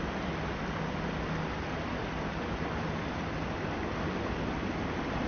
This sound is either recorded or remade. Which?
recorded